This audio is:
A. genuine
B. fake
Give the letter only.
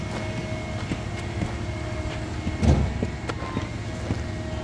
A